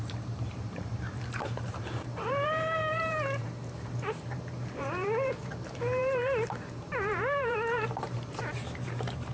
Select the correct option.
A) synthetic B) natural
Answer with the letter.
A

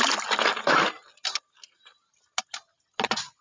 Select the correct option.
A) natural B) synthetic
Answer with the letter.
A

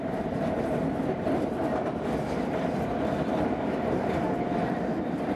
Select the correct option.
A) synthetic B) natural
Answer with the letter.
A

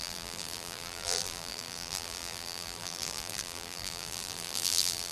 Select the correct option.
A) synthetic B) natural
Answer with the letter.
A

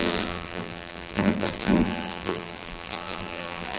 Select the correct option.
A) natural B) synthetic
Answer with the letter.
B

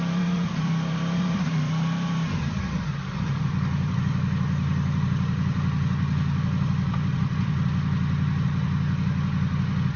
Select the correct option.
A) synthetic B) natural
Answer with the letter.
A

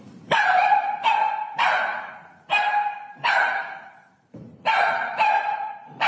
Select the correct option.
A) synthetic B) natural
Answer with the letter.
A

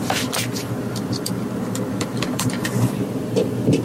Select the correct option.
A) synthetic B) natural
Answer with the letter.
A